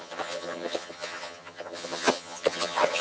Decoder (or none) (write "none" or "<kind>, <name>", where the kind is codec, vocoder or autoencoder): vocoder, HiFi-GAN